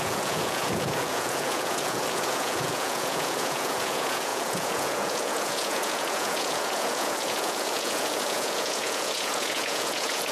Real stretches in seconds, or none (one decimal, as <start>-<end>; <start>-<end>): none